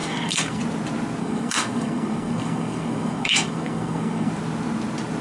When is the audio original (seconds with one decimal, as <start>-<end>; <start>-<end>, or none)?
0.6-1.2; 4.3-5.2